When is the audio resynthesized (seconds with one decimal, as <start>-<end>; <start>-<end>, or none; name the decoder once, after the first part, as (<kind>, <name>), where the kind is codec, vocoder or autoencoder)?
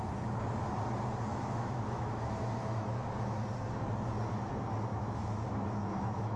1.3-3.1 (autoencoder, DAC-VAE); 4.9-6.4